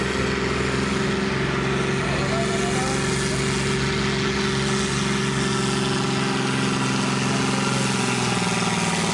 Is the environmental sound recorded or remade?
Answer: recorded